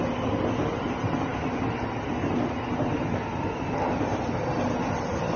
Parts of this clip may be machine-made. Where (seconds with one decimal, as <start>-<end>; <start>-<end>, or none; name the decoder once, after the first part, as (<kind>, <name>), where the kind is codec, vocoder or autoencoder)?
none